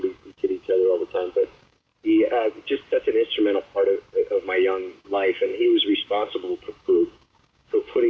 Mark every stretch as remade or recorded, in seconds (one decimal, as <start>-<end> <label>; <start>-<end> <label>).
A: 0.0-1.9 remade; 1.9-4.8 recorded; 4.8-8.1 remade